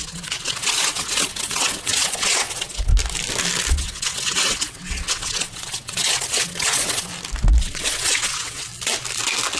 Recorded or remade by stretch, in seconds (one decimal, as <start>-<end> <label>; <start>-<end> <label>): 0.0-2.9 remade; 2.9-3.7 recorded; 3.7-7.1 remade; 7.1-7.6 recorded; 7.6-8.7 remade; 8.7-9.6 recorded